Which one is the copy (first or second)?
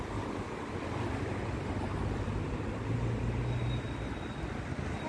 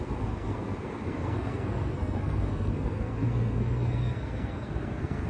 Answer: second